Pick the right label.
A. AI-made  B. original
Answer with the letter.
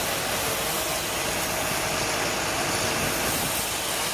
B